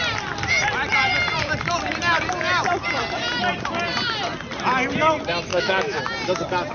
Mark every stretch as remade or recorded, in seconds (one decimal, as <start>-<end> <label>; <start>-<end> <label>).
0.0-5.5 recorded; 5.5-6.0 remade; 6.0-6.7 recorded